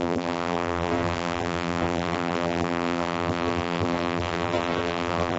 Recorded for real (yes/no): no